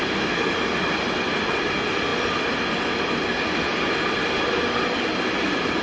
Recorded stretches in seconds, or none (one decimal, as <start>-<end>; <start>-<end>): 0.0-5.8